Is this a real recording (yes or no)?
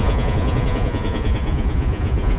no